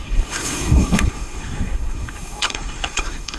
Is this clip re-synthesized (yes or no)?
yes